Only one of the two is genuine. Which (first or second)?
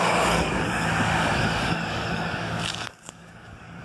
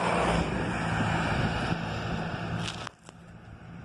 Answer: second